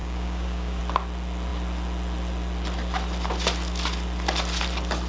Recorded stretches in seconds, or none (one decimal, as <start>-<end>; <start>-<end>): 0.8-5.1